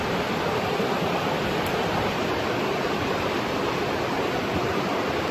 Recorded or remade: recorded